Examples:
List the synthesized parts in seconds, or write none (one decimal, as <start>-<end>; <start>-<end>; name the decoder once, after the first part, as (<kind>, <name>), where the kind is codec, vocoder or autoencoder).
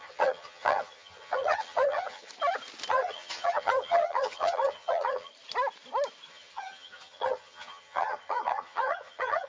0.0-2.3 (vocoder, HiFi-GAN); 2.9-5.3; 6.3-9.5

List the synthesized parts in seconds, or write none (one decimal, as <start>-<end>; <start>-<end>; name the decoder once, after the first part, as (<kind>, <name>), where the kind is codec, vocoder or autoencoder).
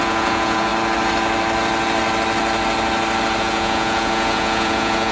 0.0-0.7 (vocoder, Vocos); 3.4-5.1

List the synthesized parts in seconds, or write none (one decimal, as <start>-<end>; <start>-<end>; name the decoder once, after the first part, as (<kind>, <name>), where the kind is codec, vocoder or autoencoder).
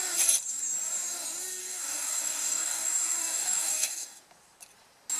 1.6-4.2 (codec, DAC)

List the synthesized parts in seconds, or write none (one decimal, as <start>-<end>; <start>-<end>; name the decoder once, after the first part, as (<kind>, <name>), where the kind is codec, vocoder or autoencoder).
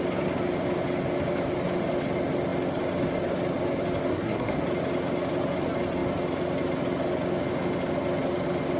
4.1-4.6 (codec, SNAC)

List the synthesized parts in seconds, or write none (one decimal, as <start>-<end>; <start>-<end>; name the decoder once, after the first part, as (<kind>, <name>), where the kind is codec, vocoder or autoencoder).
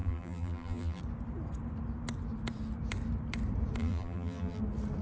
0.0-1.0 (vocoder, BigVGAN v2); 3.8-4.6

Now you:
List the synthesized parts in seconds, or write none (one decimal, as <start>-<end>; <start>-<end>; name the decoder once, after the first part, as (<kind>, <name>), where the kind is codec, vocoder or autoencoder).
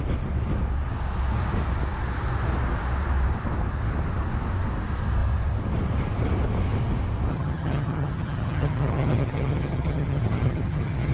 7.3-11.1 (vocoder, HiFi-GAN)